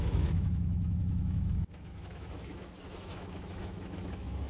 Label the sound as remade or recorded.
remade